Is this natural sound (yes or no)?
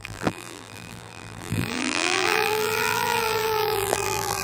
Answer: no